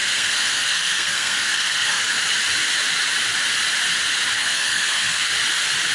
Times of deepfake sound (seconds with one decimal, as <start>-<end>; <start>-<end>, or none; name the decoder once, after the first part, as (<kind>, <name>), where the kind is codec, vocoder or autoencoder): 0.0-2.0 (codec, SNAC); 4.4-5.3